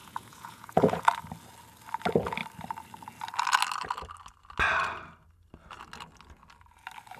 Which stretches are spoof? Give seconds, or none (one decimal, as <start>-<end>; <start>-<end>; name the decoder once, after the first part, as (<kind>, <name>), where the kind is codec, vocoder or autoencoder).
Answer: 0.0-1.0 (vocoder, Vocos)